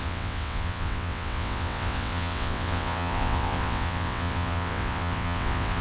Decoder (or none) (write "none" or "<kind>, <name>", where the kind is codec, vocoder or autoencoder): vocoder, WaveNeXt